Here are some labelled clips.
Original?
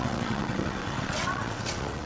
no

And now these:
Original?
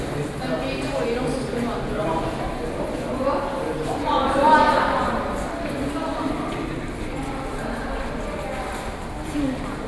yes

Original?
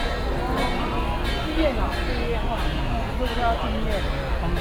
yes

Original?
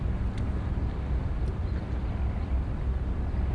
yes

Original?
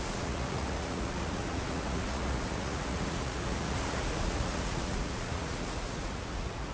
no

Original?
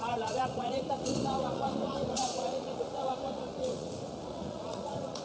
no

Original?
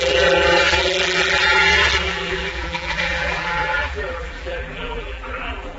no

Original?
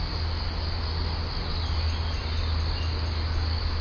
yes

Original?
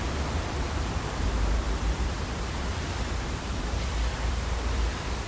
no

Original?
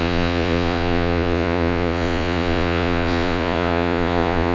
no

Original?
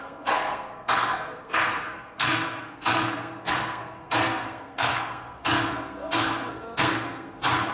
no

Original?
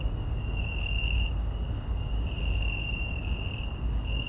no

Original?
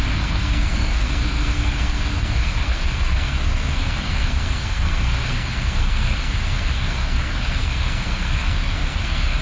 no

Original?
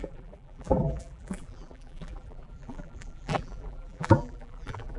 no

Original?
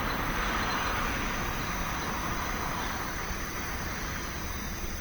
no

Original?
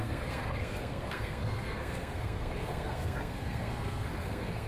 no